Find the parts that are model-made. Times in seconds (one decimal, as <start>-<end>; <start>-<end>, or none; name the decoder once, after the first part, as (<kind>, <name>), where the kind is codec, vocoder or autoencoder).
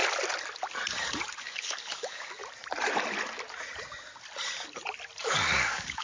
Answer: 1.4-2.4 (codec, DAC); 5.2-6.0